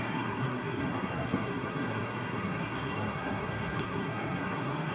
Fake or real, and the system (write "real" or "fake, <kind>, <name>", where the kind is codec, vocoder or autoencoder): fake, codec, SNAC